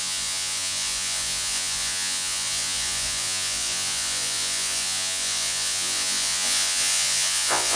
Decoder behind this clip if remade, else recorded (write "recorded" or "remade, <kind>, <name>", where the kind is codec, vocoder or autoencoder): remade, vocoder, Vocos